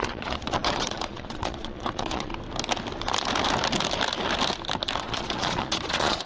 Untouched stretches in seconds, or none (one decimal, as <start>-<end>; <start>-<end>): 2.3-5.0